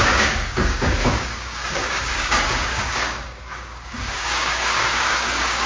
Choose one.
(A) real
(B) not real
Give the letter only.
B